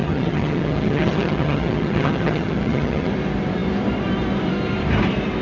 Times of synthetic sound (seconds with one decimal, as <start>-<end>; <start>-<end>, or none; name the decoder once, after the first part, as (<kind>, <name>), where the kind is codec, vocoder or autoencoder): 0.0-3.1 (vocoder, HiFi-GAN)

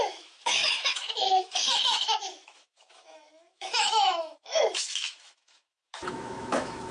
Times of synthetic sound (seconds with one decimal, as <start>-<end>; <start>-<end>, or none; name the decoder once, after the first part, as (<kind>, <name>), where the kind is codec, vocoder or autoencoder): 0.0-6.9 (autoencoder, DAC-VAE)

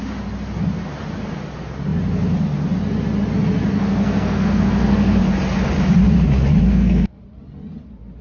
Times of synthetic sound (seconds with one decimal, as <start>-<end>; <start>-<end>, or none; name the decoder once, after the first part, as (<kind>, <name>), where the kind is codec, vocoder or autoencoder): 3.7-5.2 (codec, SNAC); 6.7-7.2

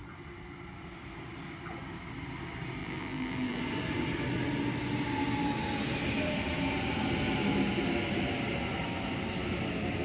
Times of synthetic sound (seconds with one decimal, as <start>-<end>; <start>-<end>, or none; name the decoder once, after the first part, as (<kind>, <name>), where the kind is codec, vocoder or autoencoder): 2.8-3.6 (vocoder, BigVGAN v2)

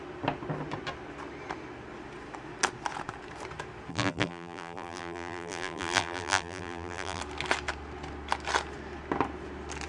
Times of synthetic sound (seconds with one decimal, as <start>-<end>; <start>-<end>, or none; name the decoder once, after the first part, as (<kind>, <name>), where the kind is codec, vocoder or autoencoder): 3.9-7.2 (vocoder, BigVGAN v2)

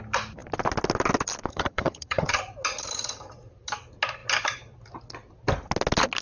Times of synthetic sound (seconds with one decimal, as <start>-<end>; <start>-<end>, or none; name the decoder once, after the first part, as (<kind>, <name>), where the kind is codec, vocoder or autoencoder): 1.5-2.4 (vocoder, HiFi-GAN)

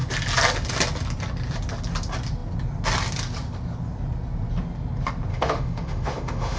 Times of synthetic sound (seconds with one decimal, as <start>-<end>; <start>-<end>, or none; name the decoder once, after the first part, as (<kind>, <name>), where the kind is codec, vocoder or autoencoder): 5.3-6.6 (autoencoder, DAC-VAE)

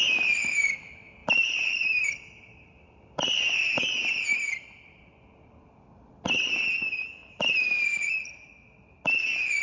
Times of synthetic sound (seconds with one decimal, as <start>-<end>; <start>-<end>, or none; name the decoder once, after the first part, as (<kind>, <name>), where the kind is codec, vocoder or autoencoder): 1.2-3.8 (vocoder, BigVGAN v2); 4.3-5.0; 7.2-8.5